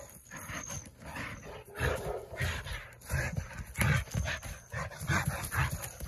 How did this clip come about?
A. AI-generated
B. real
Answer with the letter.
B